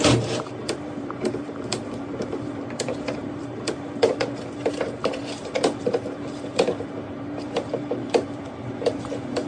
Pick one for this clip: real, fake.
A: fake